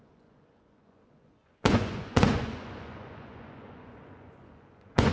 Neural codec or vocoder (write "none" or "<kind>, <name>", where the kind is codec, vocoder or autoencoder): vocoder, Vocos